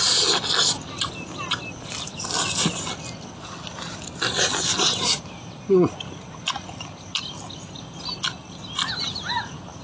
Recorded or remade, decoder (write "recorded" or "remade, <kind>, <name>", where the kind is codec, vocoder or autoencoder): recorded